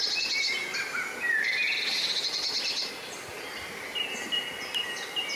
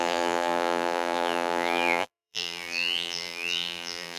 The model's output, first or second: second